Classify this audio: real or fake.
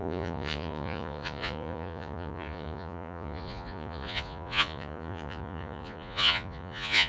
fake